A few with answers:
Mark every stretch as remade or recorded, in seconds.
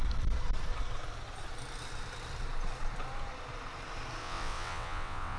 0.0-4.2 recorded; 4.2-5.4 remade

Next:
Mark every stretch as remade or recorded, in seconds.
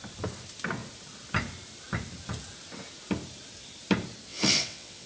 0.0-4.3 recorded; 4.3-5.1 remade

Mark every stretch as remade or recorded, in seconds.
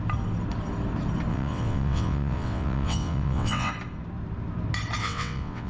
0.0-1.3 recorded; 1.3-3.7 remade; 3.7-5.0 recorded; 5.0-5.7 remade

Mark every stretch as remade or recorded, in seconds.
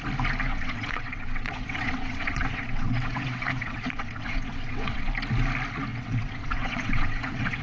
0.0-0.5 recorded; 0.5-5.1 remade; 5.1-5.9 recorded; 5.9-7.6 remade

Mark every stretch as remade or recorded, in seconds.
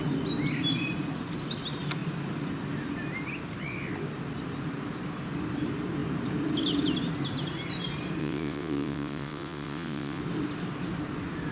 0.0-8.2 recorded; 8.2-10.2 remade; 10.2-11.5 recorded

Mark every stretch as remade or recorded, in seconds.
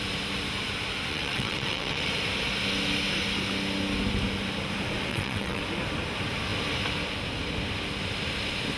0.0-1.1 recorded; 1.1-2.1 remade; 2.1-5.1 recorded; 5.1-5.6 remade; 5.6-8.8 recorded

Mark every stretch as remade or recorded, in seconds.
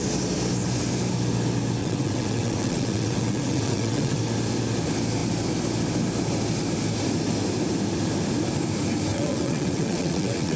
0.0-1.8 recorded; 1.8-4.2 remade; 4.2-9.1 recorded; 9.1-10.6 remade